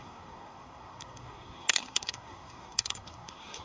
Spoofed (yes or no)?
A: yes